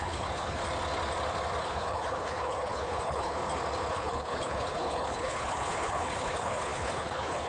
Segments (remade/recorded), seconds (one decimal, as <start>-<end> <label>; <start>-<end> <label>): 0.0-0.6 remade; 0.6-1.6 recorded; 1.6-3.4 remade; 3.4-3.9 recorded; 3.9-7.5 remade